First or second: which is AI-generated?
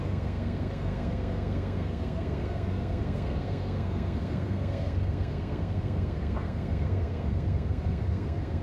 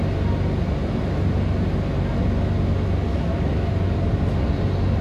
first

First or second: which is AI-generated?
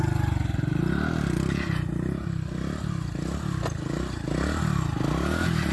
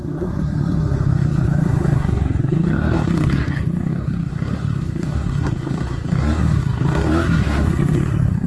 second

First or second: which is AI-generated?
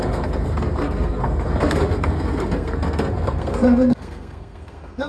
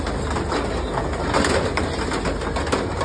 first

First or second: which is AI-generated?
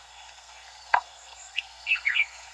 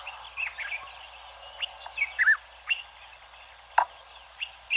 first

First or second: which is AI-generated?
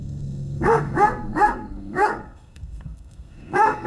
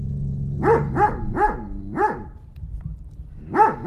first